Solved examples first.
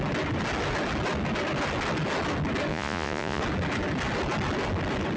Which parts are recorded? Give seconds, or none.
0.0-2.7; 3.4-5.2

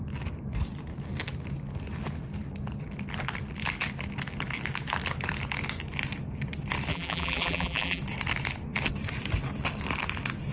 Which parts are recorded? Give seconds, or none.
0.0-6.9; 8.0-10.5

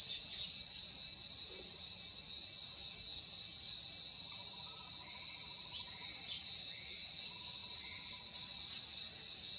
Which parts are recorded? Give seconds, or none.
0.0-9.6

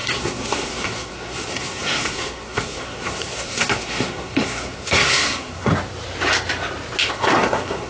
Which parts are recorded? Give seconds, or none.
5.7-7.1

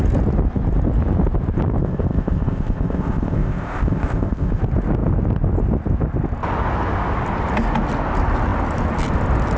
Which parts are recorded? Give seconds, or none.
0.0-1.8; 4.6-9.6